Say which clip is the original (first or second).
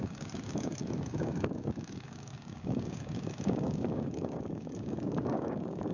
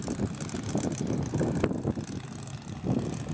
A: second